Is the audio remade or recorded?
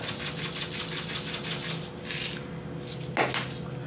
recorded